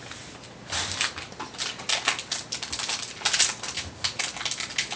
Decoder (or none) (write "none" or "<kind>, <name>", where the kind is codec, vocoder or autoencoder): none